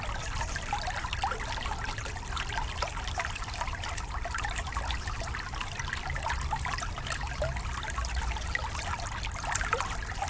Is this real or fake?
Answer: real